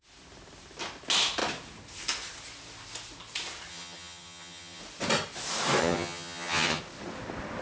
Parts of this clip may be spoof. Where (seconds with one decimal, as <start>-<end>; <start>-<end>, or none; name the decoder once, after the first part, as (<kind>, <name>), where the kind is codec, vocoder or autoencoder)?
3.7-4.8 (vocoder, HiFi-GAN); 5.8-6.8